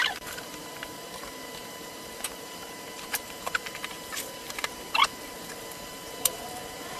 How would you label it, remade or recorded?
remade